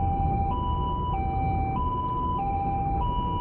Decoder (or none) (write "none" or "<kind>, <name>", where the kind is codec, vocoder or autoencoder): none